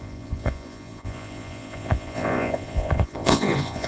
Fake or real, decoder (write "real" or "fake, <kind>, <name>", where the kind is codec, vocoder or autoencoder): fake, vocoder, Vocos